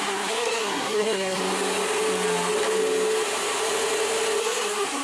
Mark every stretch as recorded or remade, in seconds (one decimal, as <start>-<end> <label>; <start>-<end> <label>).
0.0-1.4 remade; 1.4-4.4 recorded; 4.4-5.0 remade